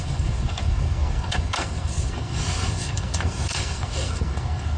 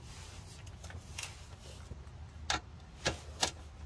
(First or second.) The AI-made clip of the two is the first